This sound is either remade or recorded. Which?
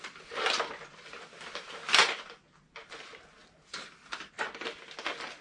recorded